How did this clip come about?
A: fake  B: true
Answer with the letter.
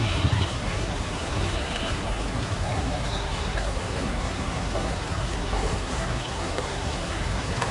A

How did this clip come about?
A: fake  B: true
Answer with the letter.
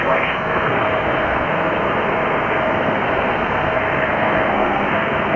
A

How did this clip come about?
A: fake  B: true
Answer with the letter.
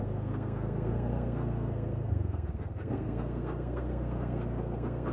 A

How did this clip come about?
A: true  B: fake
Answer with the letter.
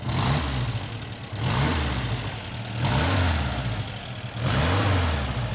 A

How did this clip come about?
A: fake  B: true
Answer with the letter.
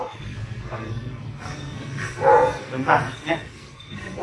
A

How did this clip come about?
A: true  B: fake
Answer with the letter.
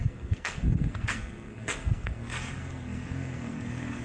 B